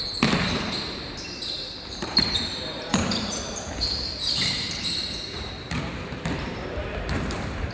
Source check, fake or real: fake